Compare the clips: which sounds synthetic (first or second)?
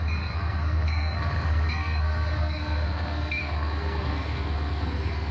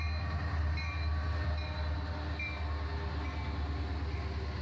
first